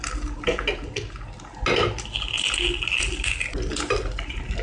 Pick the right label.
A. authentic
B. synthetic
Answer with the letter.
A